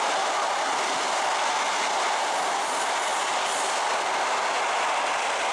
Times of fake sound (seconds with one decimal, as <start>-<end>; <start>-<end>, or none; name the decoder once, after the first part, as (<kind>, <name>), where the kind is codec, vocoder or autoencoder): none